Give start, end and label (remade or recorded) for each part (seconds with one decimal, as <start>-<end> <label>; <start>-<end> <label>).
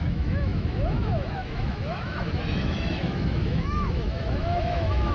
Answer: 0.0-5.1 remade